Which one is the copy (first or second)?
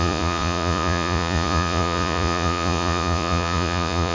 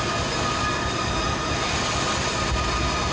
first